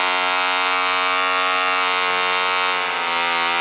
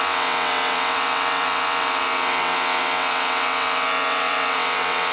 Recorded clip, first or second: first